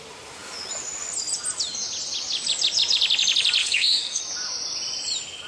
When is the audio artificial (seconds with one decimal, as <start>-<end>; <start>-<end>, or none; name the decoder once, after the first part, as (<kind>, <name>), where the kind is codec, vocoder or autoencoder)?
3.6-4.2 (codec, SNAC)